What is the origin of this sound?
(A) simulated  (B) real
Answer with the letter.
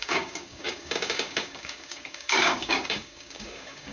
A